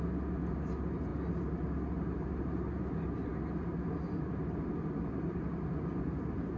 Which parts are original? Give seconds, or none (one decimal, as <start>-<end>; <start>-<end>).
0.0-6.6

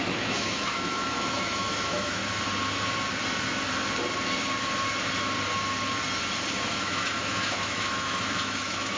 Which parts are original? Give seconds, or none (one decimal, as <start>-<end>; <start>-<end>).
2.2-6.8

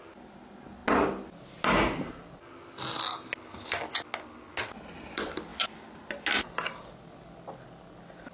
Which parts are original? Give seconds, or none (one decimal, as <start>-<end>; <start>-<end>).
0.0-8.3

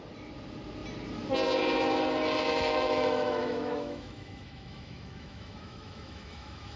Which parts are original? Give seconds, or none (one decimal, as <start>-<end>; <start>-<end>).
0.0-2.5

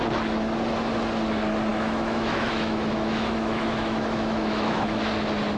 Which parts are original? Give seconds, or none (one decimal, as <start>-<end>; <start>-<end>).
0.0-1.7; 5.1-5.6

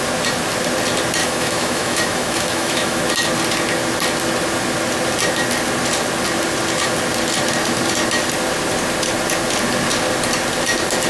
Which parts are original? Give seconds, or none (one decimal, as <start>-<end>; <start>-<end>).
0.0-1.2; 3.0-11.1

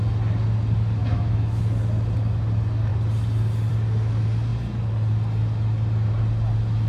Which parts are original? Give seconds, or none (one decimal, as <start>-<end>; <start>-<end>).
0.0-1.0; 1.6-6.9